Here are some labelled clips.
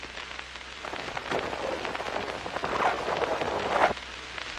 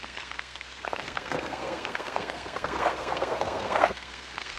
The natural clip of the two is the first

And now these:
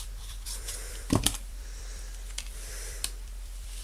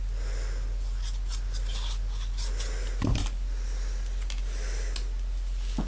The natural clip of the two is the second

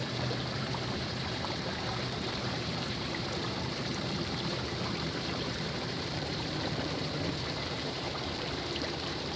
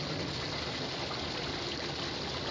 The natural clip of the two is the second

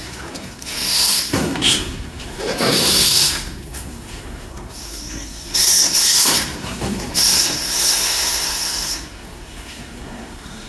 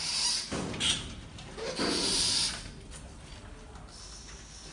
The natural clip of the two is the second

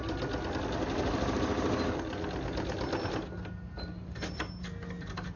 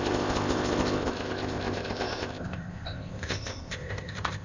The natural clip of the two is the first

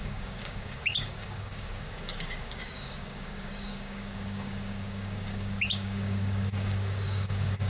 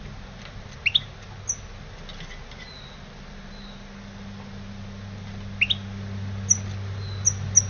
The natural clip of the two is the second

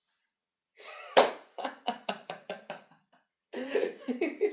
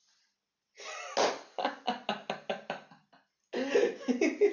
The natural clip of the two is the second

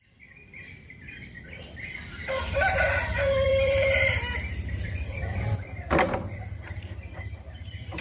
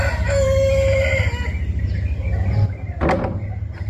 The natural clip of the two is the second